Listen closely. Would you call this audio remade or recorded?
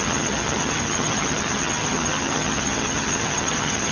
remade